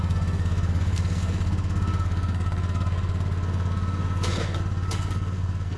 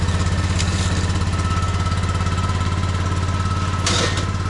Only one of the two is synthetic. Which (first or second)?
first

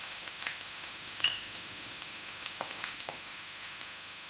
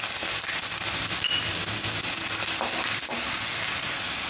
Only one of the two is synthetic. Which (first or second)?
first